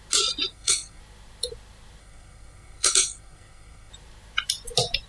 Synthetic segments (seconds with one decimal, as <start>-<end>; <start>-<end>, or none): 0.5-1.0; 2.0-3.9